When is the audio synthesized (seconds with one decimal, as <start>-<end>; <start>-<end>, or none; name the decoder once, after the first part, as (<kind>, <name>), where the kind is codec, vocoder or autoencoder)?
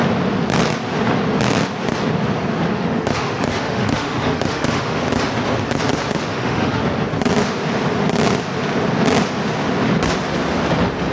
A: 2.7-5.0 (autoencoder, DAC-VAE); 6.3-6.8